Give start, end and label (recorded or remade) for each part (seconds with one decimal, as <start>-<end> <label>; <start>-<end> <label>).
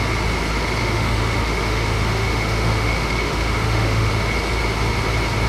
0.0-0.8 recorded; 0.8-4.1 remade; 4.1-5.5 recorded